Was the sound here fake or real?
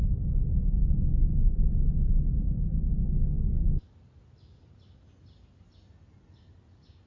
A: real